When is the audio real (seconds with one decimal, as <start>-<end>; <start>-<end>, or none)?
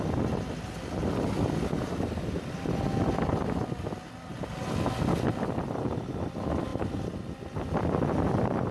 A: 0.0-8.7